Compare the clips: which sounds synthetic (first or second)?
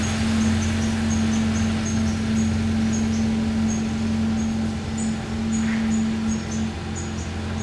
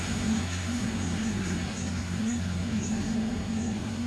second